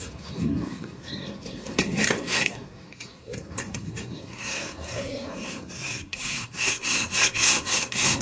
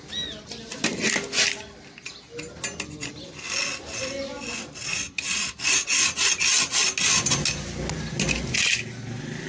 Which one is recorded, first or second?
second